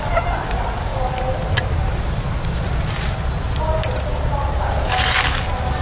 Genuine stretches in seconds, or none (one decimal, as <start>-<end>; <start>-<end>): 0.0-0.9; 2.7-3.8; 4.3-5.8

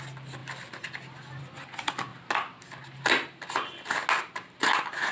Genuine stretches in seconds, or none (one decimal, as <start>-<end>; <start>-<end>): 0.0-5.1

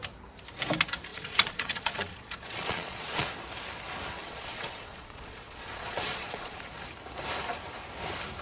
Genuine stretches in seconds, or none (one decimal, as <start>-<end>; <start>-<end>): 0.0-1.1; 3.3-4.2; 6.7-8.4

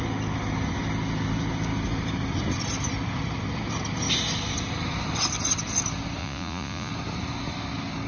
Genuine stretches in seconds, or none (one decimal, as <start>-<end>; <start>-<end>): 0.0-6.2; 6.9-8.1